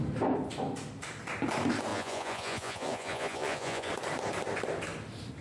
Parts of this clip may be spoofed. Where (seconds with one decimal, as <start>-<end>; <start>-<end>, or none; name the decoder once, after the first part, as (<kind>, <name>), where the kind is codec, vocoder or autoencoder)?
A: 1.9-3.9 (vocoder, Vocos)